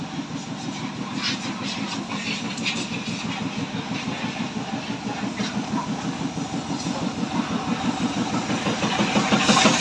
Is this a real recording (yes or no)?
yes